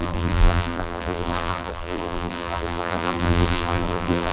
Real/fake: fake